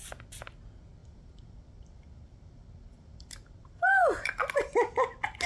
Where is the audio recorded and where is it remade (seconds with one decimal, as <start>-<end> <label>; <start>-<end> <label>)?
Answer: 0.0-1.0 recorded; 1.0-4.3 remade; 4.3-5.5 recorded